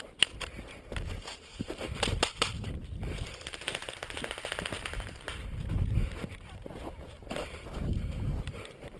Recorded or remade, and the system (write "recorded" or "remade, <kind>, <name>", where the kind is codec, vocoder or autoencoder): remade, vocoder, BigVGAN v2